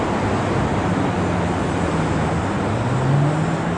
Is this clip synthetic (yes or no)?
no